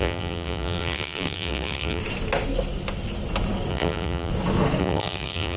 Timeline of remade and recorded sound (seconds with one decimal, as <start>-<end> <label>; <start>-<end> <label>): 0.0-2.0 remade; 2.0-3.7 recorded; 3.7-4.3 remade; 4.3-4.8 recorded; 4.8-5.6 remade